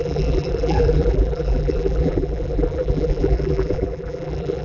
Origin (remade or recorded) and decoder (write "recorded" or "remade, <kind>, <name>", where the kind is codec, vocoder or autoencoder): remade, vocoder, BigVGAN v2